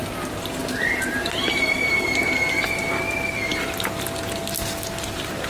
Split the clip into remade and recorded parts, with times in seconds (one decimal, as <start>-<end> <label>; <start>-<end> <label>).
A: 0.0-0.6 recorded; 0.6-2.3 remade; 2.3-5.5 recorded